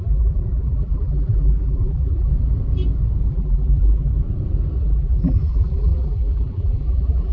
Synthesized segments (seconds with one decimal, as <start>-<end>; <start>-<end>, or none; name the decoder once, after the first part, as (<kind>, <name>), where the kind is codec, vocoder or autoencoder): 0.0-2.3 (vocoder, BigVGAN v2); 3.3-4.1; 4.8-7.3